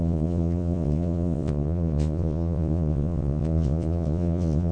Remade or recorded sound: remade